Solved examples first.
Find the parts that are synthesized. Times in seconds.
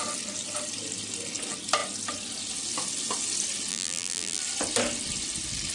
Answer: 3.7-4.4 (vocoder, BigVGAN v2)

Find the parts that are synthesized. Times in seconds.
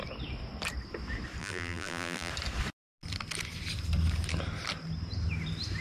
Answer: 1.4-2.3 (vocoder, BigVGAN v2)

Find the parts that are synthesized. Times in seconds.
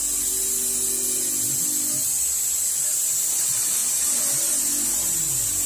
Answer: none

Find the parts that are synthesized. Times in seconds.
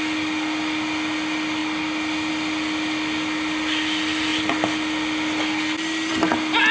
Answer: none